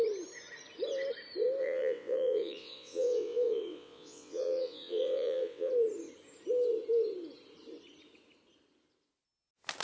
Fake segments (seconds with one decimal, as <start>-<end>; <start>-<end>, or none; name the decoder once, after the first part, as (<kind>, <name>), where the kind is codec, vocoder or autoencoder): 1.6-5.7 (vocoder, WaveNeXt)